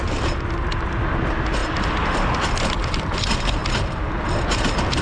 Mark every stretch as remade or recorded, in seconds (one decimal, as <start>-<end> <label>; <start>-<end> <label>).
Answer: 0.0-1.6 recorded; 1.6-2.6 remade; 2.6-5.0 recorded

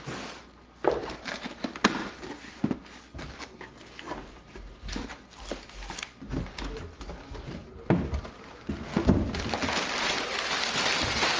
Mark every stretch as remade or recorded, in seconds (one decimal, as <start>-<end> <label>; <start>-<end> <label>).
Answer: 0.0-1.0 recorded; 1.0-2.4 remade; 2.4-11.4 recorded

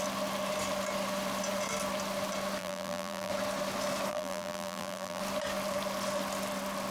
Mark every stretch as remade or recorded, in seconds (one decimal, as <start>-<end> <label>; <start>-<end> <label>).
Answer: 0.0-2.6 recorded; 2.6-3.3 remade; 3.3-4.1 recorded; 4.1-5.2 remade; 5.2-6.9 recorded

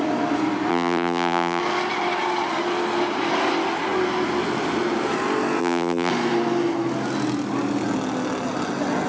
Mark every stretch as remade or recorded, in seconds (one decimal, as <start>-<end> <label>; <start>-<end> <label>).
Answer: 0.0-0.7 recorded; 0.7-1.6 remade; 1.6-5.6 recorded; 5.6-6.1 remade; 6.1-9.1 recorded

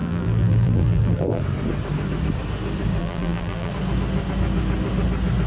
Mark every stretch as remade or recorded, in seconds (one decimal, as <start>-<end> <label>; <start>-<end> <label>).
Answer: 0.0-1.4 remade; 1.4-3.0 recorded; 3.0-3.7 remade; 3.7-5.5 recorded

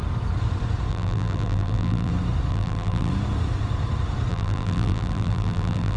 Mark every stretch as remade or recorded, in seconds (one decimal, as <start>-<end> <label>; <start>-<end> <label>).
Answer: 0.0-0.9 recorded; 0.9-2.1 remade; 2.1-2.5 recorded; 2.5-3.1 remade; 3.1-4.3 recorded; 4.3-6.0 remade

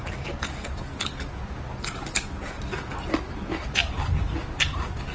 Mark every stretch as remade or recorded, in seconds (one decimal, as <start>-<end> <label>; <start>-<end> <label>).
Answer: 0.0-5.1 recorded